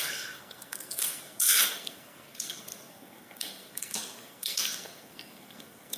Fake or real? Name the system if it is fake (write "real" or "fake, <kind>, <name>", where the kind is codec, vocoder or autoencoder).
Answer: fake, codec, SNAC